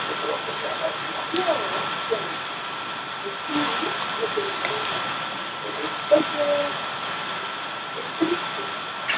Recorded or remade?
recorded